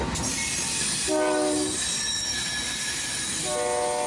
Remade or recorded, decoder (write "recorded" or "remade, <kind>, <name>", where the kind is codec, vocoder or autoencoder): recorded